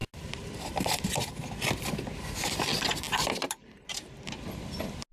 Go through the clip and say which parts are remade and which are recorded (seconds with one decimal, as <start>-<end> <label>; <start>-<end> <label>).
0.0-5.1 recorded